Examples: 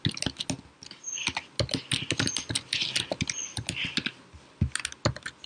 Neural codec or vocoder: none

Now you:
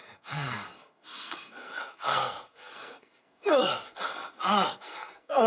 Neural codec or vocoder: codec, SNAC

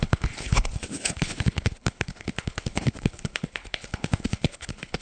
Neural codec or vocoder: codec, HILCodec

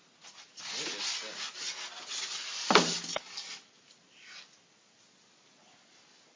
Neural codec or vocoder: none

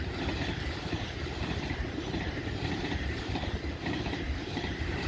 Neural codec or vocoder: vocoder, BigVGAN v2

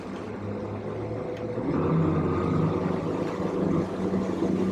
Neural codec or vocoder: none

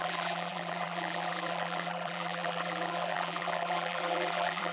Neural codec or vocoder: vocoder, BigVGAN v2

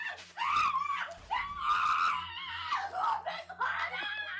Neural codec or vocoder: none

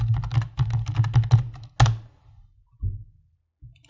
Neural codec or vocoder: none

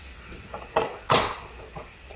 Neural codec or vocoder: vocoder, WaveNeXt